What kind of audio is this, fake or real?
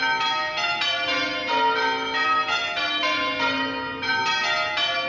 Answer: real